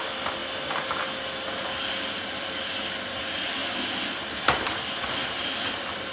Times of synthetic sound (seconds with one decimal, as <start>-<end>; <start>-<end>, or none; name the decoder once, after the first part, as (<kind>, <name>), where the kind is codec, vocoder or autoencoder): none